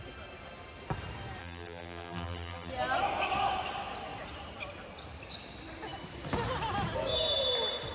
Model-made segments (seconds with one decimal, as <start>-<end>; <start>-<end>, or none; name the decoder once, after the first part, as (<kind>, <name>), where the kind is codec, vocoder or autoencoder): 1.4-2.7 (vocoder, BigVGAN v2)